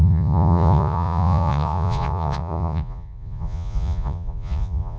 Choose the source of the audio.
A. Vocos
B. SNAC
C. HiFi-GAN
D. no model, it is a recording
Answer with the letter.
A